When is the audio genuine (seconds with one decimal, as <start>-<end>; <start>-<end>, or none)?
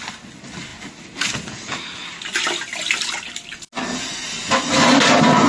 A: 0.0-5.5